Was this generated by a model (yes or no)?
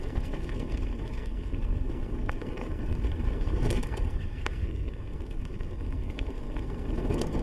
yes